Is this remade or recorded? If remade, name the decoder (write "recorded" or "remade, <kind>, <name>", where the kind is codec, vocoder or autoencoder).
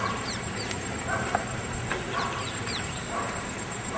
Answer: remade, vocoder, BigVGAN v2